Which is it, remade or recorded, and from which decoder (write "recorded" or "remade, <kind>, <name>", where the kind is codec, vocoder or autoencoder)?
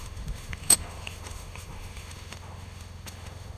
remade, autoencoder, DAC-VAE